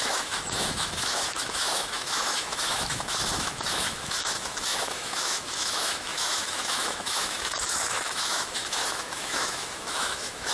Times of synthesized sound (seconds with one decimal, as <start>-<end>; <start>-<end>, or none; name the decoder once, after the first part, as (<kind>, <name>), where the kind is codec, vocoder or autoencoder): 0.0-10.5 (autoencoder, DAC-VAE)